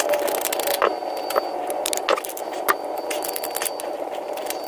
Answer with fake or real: real